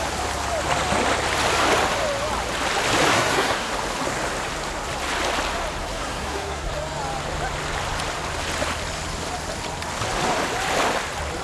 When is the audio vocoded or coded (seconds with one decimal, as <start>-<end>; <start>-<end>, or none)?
3.1-3.7; 5.8-6.7